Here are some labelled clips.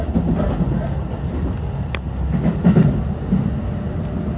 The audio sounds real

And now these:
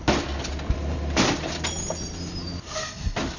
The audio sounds real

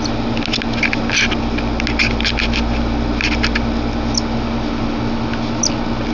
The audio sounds real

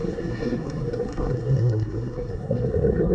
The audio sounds fake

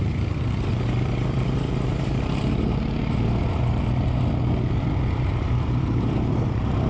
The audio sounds fake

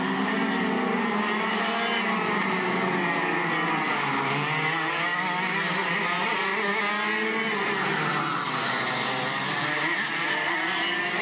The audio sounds real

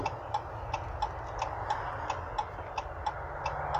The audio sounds real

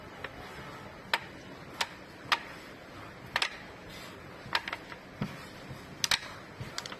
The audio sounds real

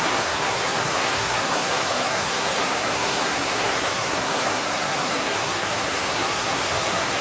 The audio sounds fake